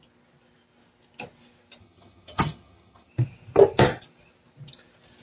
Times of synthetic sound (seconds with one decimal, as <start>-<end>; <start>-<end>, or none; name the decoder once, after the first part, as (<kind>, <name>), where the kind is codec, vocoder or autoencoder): 1.8-3.1 (vocoder, HiFi-GAN)